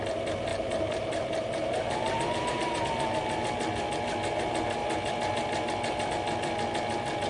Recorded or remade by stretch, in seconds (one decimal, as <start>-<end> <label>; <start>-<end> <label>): 0.0-0.5 recorded; 0.5-2.8 remade; 2.8-7.3 recorded

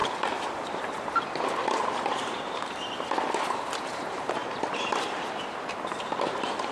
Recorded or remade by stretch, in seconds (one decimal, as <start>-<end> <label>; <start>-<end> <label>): 0.0-3.8 recorded; 3.8-4.4 remade; 4.4-5.0 recorded; 5.0-6.7 remade

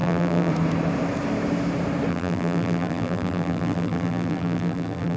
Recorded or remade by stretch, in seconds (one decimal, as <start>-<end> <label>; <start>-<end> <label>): 0.0-0.5 remade; 0.5-2.1 recorded; 2.1-5.2 remade

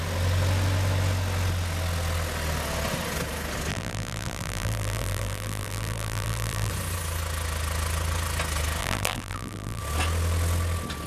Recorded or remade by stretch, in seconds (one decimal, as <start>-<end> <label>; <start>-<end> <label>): 0.0-3.7 recorded; 3.7-6.7 remade; 6.7-8.8 recorded; 8.8-9.8 remade; 9.8-11.1 recorded

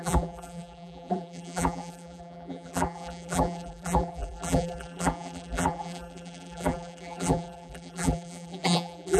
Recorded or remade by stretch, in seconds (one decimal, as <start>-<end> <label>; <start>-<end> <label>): 0.0-9.2 remade

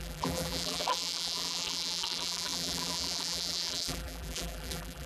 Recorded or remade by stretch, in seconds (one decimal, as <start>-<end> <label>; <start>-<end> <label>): 0.0-5.1 remade

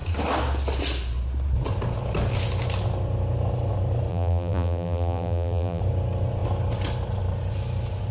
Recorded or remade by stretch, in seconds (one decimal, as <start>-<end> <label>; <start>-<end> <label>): 0.0-4.1 recorded; 4.1-5.8 remade; 5.8-8.1 recorded